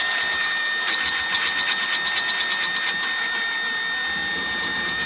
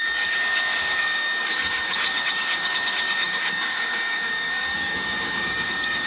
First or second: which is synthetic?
second